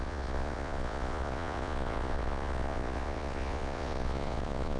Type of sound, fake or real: fake